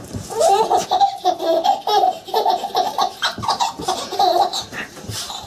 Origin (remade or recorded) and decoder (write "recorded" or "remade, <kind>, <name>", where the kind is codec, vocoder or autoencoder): remade, vocoder, BigVGAN v2